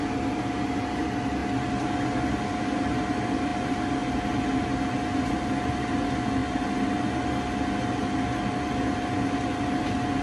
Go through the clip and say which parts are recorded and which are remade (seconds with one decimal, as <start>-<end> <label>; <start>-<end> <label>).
0.0-10.2 recorded